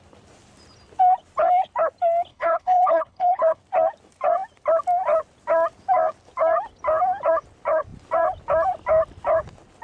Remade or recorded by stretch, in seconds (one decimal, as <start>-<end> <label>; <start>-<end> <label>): 0.0-2.3 recorded; 2.3-3.6 remade; 3.6-9.8 recorded